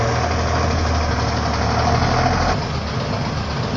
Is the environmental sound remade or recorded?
recorded